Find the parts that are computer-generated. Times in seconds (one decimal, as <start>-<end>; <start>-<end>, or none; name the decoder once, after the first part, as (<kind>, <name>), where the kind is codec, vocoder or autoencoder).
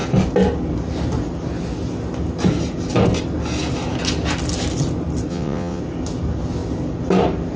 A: 5.3-5.8 (vocoder, WaveNeXt)